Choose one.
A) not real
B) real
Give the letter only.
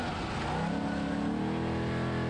B